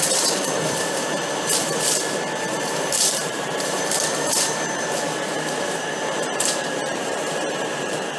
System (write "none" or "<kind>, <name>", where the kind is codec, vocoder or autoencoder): vocoder, BigVGAN v2